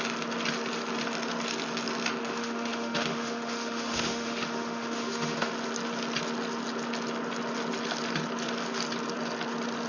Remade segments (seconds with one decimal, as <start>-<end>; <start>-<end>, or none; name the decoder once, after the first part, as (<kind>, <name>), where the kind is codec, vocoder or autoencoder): 2.2-5.5 (autoencoder, DAC-VAE)

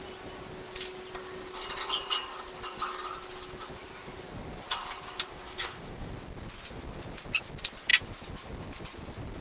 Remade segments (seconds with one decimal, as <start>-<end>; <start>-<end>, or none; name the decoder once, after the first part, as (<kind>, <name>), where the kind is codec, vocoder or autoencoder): 5.3-6.1 (codec, DAC)

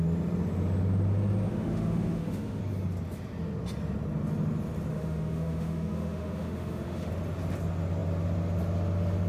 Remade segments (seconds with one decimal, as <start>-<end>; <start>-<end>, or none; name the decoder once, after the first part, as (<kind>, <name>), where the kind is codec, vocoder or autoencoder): 1.5-2.6 (autoencoder, DAC-VAE); 4.9-7.1

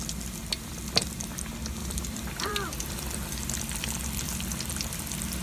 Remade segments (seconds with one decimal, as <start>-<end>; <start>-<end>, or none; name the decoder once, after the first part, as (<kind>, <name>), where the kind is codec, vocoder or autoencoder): 1.8-5.0 (vocoder, BigVGAN v2)

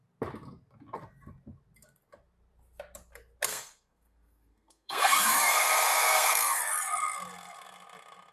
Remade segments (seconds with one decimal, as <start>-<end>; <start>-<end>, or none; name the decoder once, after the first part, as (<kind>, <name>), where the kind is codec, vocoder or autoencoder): 3.5-6.6 (codec, SNAC)

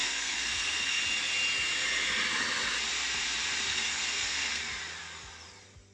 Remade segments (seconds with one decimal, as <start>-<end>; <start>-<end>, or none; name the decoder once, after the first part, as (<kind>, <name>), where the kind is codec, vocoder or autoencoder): 0.0-1.0 (codec, SNAC); 3.7-4.6

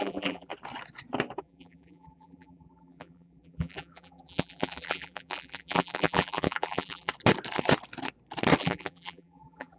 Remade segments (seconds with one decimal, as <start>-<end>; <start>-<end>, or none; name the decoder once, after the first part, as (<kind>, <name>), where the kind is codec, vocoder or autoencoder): 0.0-0.5 (vocoder, BigVGAN v2); 1.4-7.1; 8.6-9.8